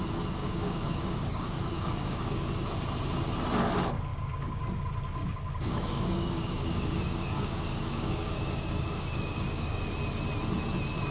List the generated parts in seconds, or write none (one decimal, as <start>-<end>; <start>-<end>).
0.4-2.5; 4.1-4.8; 5.2-9.8